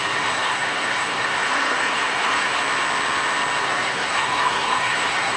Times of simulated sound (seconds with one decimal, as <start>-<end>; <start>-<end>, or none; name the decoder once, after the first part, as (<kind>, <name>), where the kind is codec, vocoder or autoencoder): 0.0-2.6 (codec, SNAC); 3.6-5.4